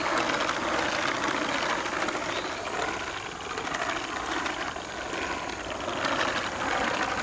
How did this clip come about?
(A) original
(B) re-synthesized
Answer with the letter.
A